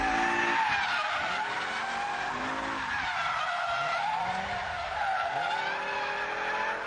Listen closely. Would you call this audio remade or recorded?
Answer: recorded